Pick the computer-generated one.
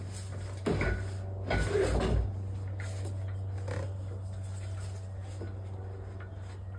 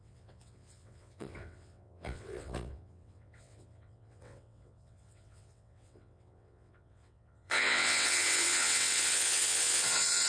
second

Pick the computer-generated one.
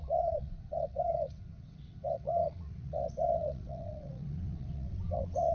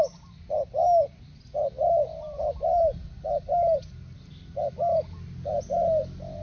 first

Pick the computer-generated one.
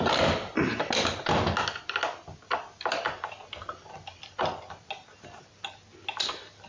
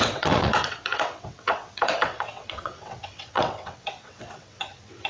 second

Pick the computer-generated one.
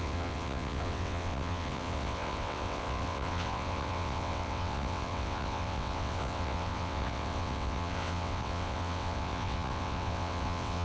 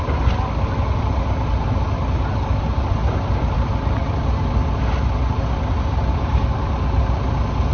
first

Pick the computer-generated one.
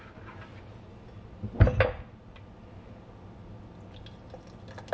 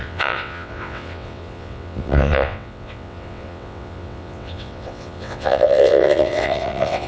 second